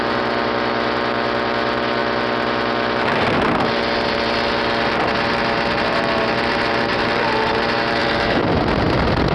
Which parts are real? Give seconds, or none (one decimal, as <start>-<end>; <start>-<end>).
0.0-6.9; 7.6-8.0; 8.7-9.3